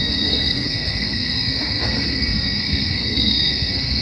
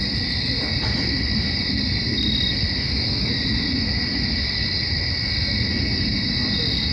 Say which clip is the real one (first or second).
second